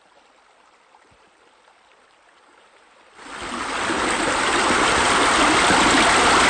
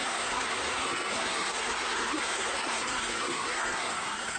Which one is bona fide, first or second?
first